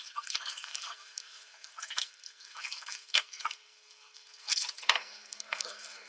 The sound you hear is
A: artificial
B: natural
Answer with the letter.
A